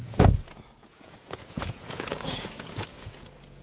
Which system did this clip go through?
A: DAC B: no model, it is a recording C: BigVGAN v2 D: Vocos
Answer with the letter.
D